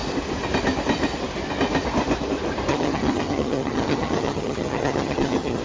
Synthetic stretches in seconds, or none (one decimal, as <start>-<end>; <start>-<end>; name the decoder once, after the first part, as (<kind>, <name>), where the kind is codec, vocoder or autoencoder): 2.7-5.6 (vocoder, HiFi-GAN)